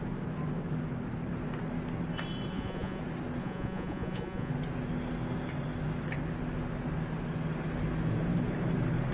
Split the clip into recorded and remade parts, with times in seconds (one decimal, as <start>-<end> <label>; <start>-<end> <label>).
0.0-2.5 recorded; 2.5-3.0 remade; 3.0-3.4 recorded; 3.4-4.5 remade; 4.5-9.1 recorded